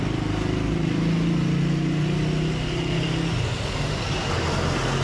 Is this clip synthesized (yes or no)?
no